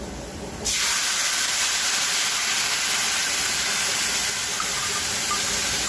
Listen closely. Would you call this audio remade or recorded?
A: remade